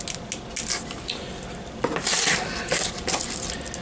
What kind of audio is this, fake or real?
real